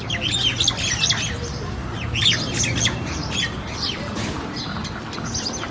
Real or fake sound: real